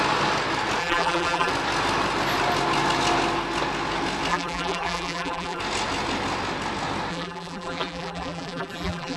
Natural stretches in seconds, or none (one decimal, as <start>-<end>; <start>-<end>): 0.0-0.8; 1.5-4.3; 5.6-7.1